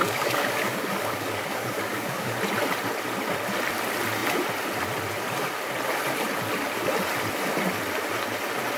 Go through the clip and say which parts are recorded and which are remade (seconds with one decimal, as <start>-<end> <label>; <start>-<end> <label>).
0.0-2.4 remade; 2.4-8.8 recorded